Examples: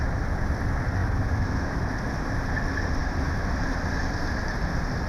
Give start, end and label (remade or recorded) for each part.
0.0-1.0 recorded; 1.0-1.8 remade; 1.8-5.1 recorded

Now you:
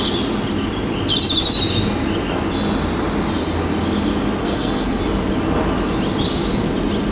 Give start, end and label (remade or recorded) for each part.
0.0-4.4 recorded; 4.4-5.0 remade; 5.0-7.1 recorded

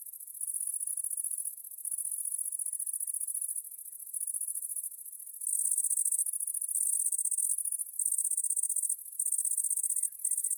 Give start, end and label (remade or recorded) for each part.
0.0-10.6 recorded

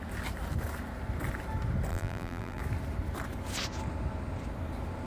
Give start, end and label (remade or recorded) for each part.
0.0-1.9 recorded; 1.9-2.6 remade; 2.6-5.1 recorded